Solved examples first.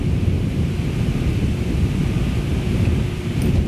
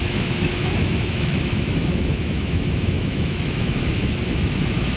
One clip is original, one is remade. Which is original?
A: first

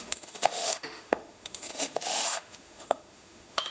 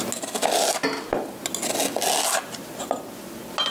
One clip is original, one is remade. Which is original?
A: second